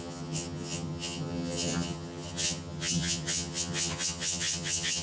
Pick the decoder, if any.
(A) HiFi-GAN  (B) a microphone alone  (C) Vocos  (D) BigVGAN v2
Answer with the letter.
A